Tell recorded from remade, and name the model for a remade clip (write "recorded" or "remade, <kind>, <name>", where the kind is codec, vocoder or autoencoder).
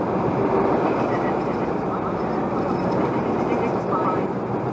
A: recorded